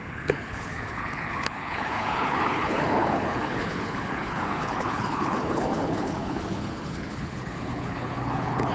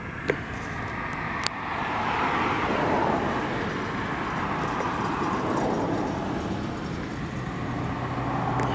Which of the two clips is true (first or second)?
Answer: second